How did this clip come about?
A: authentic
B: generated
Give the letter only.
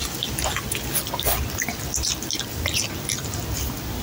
A